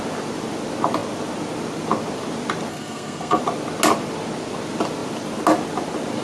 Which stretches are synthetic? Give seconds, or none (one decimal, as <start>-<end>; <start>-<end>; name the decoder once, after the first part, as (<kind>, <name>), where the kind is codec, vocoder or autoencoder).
2.7-3.4 (codec, SNAC)